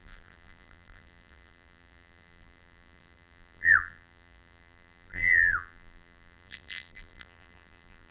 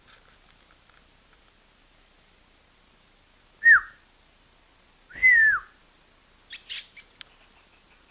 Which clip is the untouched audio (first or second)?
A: second